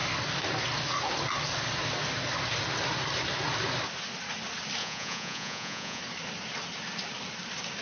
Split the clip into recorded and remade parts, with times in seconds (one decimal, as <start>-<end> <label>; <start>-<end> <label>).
0.0-4.8 recorded; 4.8-6.0 remade; 6.0-7.8 recorded